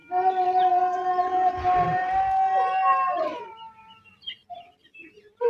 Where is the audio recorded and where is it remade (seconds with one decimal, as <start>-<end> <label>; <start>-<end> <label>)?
0.0-4.4 recorded; 4.4-5.5 remade